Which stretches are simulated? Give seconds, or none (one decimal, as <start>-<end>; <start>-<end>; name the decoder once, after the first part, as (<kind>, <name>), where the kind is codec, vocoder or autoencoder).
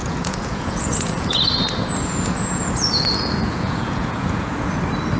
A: 0.0-1.4 (vocoder, Vocos); 2.0-4.7